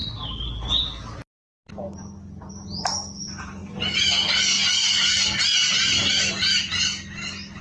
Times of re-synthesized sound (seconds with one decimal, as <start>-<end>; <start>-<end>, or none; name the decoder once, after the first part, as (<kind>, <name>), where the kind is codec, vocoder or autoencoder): none